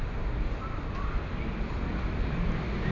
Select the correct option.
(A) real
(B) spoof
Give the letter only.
A